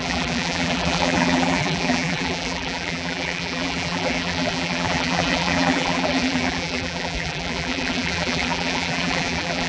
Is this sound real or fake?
fake